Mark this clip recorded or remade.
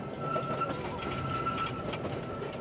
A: recorded